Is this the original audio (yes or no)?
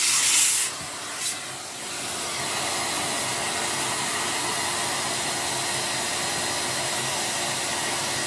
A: yes